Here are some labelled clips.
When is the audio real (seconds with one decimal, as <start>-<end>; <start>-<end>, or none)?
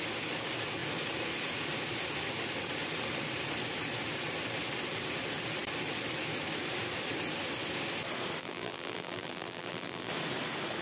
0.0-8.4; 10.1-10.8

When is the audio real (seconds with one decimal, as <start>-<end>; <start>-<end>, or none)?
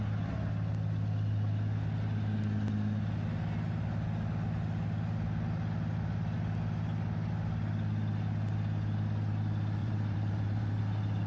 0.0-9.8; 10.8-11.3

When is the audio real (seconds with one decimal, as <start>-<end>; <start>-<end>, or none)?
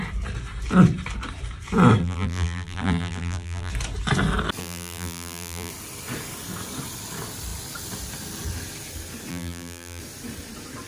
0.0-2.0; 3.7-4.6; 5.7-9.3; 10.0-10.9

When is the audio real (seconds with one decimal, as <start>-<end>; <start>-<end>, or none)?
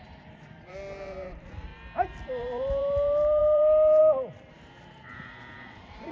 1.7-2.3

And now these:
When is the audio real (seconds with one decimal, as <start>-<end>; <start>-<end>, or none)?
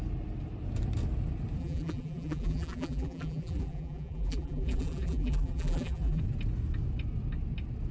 0.0-1.6; 6.2-7.9